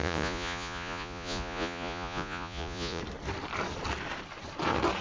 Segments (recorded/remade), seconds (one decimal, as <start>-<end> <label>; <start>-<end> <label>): 0.0-3.0 remade; 3.0-5.0 recorded